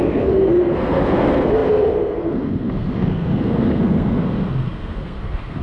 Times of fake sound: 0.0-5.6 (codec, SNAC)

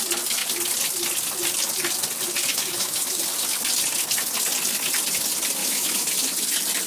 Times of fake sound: 2.5-3.2 (autoencoder, DAC-VAE); 5.6-6.1

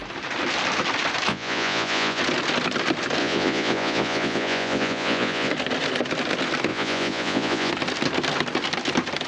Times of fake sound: 1.3-2.2 (vocoder, Vocos); 3.2-5.5; 6.7-7.7

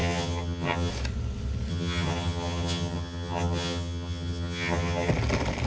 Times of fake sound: 0.0-0.9 (vocoder, HiFi-GAN); 1.7-5.1

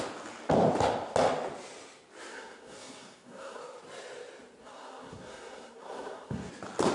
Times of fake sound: 2.3-3.6 (codec, SNAC); 4.6-6.5

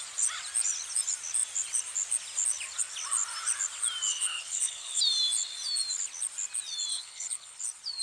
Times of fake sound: 4.1-5.0 (codec, HILCodec); 6.9-7.6

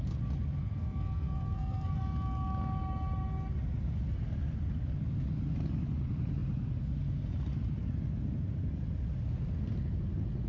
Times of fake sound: 0.6-2.0 (codec, SNAC)

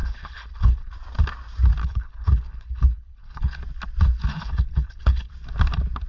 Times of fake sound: 0.0-0.9 (codec, HILCodec); 1.8-3.6; 4.3-5.3